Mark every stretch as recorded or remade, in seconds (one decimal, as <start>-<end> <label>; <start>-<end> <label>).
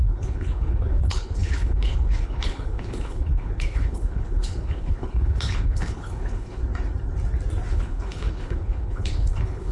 0.0-6.6 remade; 6.6-7.7 recorded; 7.7-9.7 remade